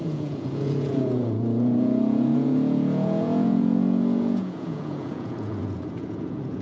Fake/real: fake